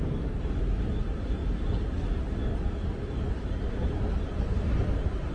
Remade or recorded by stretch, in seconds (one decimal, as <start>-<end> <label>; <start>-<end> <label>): 0.0-5.3 recorded